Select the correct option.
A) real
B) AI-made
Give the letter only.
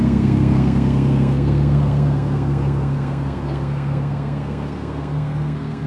B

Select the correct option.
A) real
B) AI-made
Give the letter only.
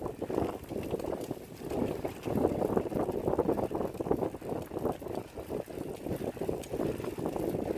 A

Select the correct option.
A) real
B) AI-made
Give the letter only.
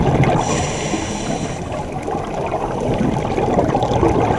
A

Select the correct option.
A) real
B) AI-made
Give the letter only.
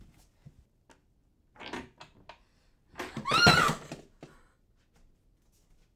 A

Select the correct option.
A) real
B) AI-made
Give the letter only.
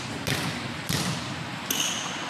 A